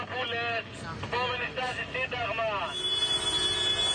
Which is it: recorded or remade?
recorded